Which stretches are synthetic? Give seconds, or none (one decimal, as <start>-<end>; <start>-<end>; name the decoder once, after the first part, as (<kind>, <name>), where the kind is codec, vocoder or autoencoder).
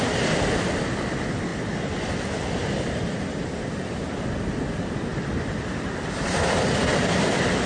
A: none